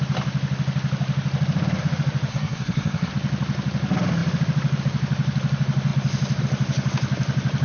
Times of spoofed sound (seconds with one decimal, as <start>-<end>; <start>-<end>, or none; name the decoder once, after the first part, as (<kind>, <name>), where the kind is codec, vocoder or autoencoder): 2.3-3.1 (codec, SNAC)